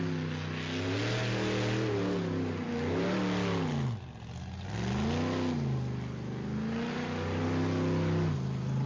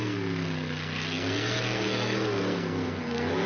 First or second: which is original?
first